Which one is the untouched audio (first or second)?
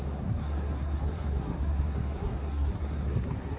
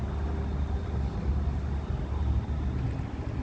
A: second